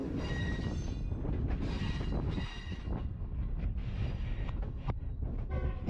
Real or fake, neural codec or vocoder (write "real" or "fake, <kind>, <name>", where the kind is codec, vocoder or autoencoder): real